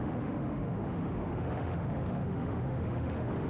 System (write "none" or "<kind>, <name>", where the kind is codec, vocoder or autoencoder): autoencoder, DAC-VAE